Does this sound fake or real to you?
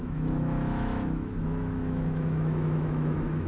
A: fake